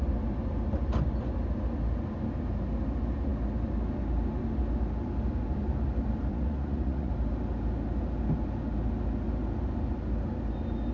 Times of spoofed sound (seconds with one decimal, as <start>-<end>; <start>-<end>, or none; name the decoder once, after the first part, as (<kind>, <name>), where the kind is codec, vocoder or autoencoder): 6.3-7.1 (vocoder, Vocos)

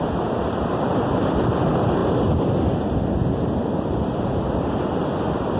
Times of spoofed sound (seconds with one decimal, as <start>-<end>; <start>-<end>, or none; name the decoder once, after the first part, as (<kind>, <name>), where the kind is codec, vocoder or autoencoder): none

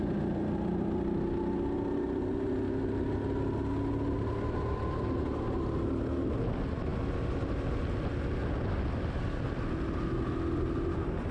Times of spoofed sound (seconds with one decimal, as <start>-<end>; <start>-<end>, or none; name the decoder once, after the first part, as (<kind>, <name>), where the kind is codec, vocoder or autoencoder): none